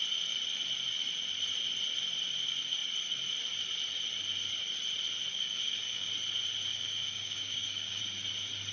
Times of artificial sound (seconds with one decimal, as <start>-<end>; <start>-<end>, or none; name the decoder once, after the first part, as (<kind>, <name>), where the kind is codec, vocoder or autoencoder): 5.3-6.1 (codec, DAC); 6.7-8.0

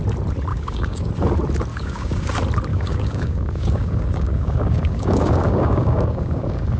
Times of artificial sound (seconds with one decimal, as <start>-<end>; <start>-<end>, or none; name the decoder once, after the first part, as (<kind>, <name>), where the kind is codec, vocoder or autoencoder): 0.5-1.1 (codec, DAC); 1.7-2.3; 2.7-6.8

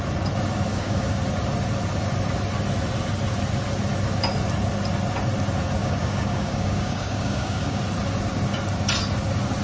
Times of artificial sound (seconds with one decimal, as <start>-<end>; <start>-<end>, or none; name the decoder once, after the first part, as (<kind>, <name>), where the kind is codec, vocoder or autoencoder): 0.7-1.2 (codec, DAC); 5.8-7.8

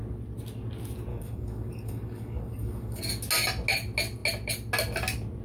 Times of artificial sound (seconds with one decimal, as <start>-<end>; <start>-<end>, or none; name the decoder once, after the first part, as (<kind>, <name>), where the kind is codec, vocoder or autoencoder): 1.1-3.0 (codec, DAC)

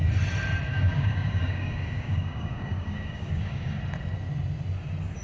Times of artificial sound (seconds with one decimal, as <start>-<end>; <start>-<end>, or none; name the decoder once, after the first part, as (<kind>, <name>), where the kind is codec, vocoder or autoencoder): 0.7-3.8 (codec, DAC)

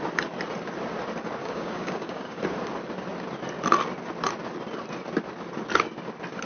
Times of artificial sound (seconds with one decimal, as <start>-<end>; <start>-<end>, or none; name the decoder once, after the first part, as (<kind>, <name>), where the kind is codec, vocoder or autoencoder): 1.4-2.4 (codec, DAC)

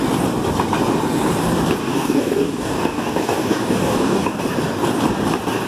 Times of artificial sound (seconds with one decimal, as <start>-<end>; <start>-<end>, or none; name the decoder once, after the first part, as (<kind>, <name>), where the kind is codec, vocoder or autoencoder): 1.8-4.4 (codec, DAC)

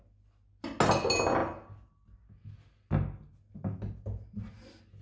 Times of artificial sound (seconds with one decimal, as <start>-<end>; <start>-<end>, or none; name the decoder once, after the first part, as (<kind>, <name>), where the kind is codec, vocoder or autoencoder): none